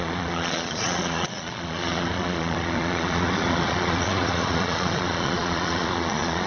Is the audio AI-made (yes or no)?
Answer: yes